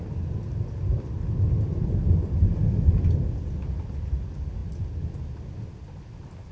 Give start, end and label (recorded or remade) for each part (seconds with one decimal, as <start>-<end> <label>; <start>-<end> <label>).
0.0-6.5 recorded